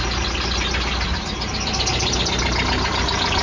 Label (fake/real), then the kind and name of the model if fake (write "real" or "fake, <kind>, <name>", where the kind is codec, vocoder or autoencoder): real